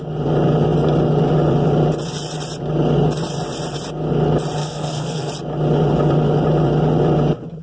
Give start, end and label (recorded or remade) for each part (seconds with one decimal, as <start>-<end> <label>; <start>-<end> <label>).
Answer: 0.0-4.6 recorded; 4.6-5.3 remade; 5.3-7.6 recorded